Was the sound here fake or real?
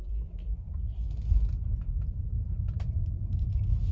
fake